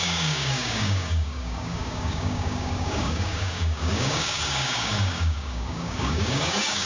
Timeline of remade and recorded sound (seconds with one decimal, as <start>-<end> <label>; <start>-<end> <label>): 0.0-6.9 remade